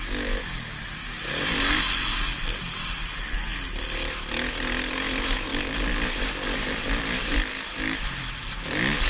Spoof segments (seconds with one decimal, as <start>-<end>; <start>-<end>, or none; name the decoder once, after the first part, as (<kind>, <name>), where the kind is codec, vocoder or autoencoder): none